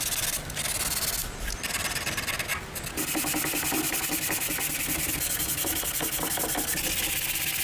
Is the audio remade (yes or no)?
no